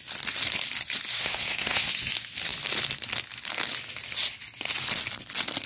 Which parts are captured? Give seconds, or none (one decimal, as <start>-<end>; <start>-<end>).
0.0-1.1; 1.9-5.7